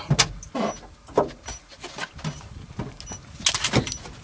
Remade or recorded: recorded